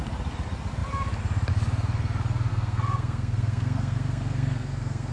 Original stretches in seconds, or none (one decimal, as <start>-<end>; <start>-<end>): 0.0-2.5